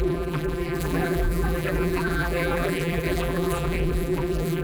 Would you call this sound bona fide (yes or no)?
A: no